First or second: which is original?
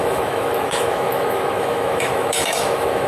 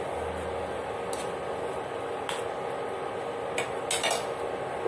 second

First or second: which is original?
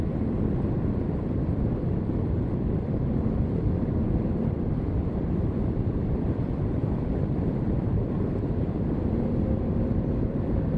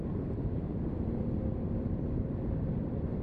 second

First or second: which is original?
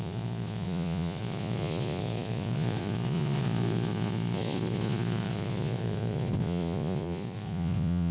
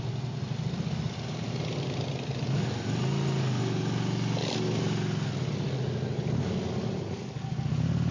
second